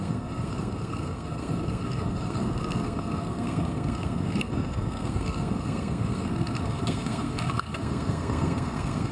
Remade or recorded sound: remade